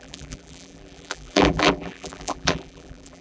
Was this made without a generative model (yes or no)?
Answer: no